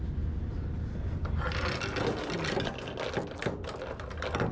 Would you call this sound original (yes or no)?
yes